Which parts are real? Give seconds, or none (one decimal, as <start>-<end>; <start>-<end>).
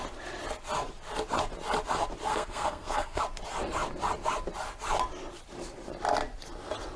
0.0-2.3; 3.2-7.0